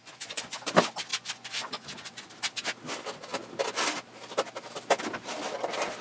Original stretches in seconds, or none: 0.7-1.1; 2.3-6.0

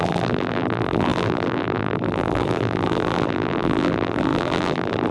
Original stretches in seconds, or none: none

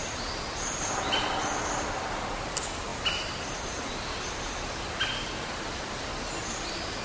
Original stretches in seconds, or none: 0.0-7.0

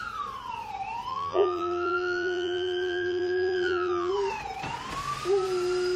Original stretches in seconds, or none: 0.0-1.1; 4.1-6.0